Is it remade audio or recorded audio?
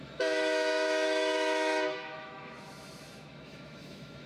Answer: remade